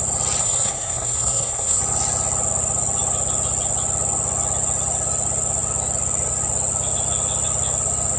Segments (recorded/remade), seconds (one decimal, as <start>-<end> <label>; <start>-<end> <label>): 0.0-0.4 recorded; 0.4-1.8 remade; 1.8-8.2 recorded